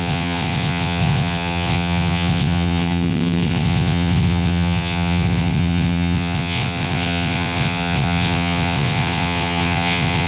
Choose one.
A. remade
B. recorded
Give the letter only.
A